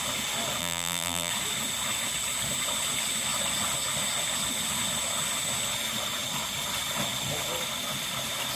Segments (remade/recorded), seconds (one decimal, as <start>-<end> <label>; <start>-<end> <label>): 0.0-0.6 recorded; 0.6-1.3 remade; 1.3-8.6 recorded